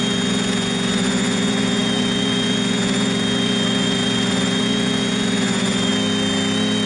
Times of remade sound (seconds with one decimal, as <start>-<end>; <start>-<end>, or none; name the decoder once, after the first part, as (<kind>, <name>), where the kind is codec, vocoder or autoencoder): 0.0-5.9 (vocoder, Vocos)